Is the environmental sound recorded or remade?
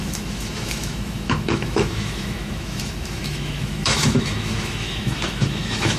remade